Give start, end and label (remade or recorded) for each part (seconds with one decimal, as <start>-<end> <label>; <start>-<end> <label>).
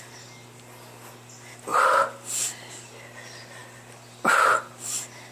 0.0-5.3 recorded